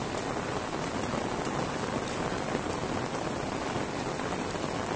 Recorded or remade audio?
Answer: recorded